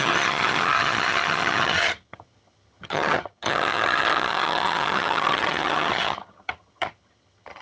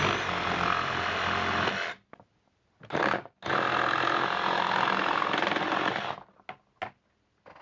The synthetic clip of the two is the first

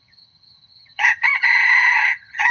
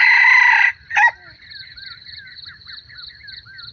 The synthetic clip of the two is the first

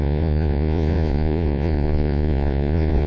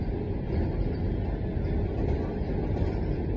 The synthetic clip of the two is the first